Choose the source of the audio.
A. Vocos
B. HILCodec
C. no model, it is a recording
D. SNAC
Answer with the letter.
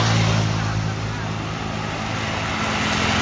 C